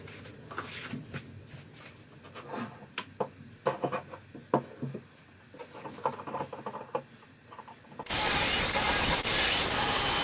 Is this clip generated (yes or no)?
no